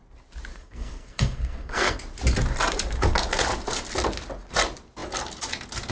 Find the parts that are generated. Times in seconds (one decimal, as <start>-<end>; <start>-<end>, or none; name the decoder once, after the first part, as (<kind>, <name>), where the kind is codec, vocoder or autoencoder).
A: 0.5-2.0 (codec, SNAC)